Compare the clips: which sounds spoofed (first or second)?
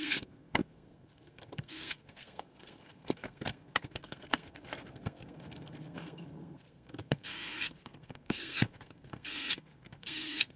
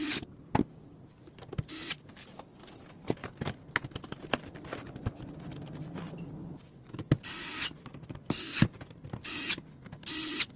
first